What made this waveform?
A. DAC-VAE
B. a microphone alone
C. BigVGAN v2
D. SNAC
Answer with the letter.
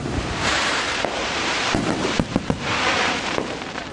C